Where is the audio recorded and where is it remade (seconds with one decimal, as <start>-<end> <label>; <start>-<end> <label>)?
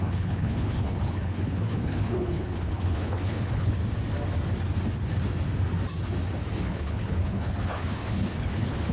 0.0-3.8 remade; 3.8-6.5 recorded; 6.5-8.9 remade